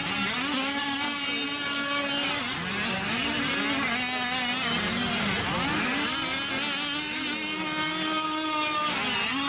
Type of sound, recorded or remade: recorded